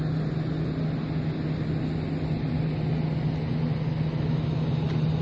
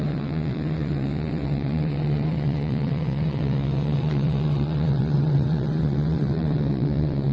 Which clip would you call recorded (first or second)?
first